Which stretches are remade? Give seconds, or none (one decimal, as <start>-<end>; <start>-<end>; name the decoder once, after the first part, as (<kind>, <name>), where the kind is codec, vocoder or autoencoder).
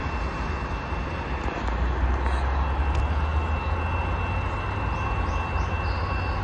none